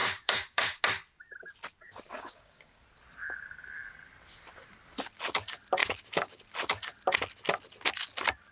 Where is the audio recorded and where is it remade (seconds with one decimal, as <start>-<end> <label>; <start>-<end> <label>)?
0.0-0.8 remade; 0.8-2.1 recorded; 2.1-2.8 remade; 2.8-5.8 recorded; 5.8-6.4 remade; 6.4-8.5 recorded